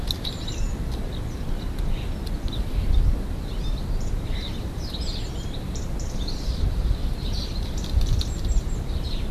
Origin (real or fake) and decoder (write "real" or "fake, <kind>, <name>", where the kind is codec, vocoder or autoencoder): fake, vocoder, BigVGAN v2